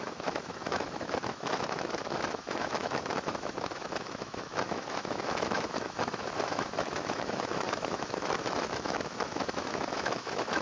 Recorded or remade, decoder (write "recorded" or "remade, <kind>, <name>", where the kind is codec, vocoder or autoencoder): remade, autoencoder, DAC-VAE